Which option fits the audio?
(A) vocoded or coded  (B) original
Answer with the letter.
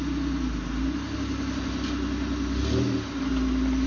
B